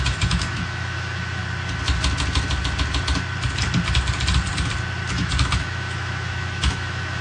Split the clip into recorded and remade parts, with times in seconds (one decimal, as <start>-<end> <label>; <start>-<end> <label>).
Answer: 0.0-1.4 remade; 1.4-5.1 recorded; 5.1-7.2 remade